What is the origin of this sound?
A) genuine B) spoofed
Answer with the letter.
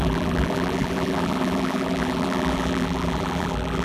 B